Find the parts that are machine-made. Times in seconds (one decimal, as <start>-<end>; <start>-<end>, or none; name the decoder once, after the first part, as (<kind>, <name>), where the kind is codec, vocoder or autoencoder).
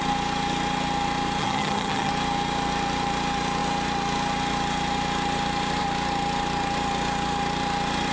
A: 1.4-2.1 (vocoder, HiFi-GAN)